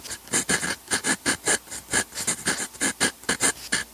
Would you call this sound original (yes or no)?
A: yes